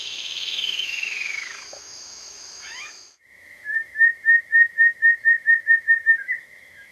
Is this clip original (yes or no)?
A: no